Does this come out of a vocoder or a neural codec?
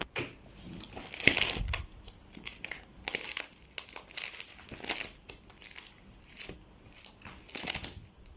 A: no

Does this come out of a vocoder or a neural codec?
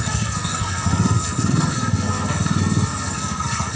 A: yes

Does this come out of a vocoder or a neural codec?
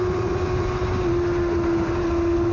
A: no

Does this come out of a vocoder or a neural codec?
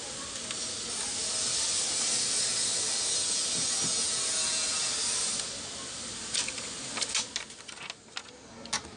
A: no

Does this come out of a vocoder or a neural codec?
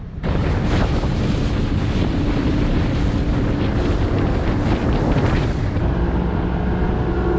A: no